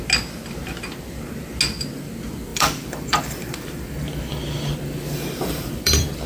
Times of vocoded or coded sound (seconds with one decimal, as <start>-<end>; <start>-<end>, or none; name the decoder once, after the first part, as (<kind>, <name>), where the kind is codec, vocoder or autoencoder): 2.5-6.3 (vocoder, BigVGAN v2)